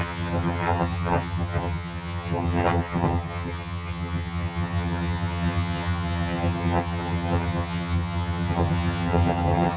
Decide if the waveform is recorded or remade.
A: remade